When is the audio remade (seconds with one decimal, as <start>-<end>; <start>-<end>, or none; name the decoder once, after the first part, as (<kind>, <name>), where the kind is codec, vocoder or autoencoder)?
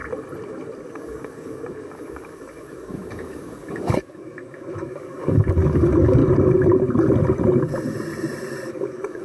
0.9-6.2 (codec, DAC); 8.7-9.2